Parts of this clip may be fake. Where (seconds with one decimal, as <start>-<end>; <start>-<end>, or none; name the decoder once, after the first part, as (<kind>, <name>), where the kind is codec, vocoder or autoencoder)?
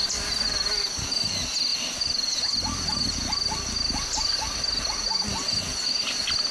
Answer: none